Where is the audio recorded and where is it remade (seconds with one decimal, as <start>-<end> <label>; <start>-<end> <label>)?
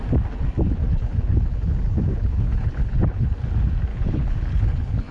0.0-0.9 recorded; 0.9-3.3 remade; 3.3-3.9 recorded; 3.9-5.1 remade